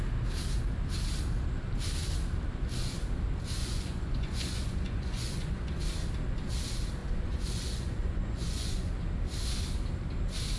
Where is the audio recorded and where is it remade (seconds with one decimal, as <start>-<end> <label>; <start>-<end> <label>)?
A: 0.0-3.6 recorded; 3.6-5.8 remade; 5.8-7.0 recorded; 7.0-8.9 remade; 8.9-10.6 recorded